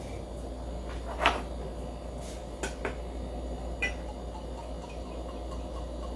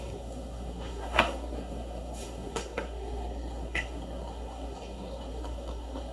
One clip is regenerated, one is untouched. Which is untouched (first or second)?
first